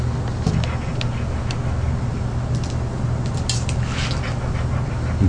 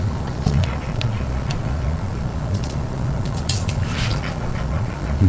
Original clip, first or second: first